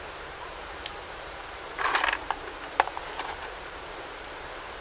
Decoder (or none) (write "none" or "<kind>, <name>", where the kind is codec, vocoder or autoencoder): vocoder, BigVGAN v2